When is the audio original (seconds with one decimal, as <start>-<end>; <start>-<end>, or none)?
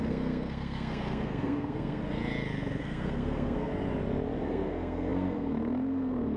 2.0-2.8; 3.7-4.4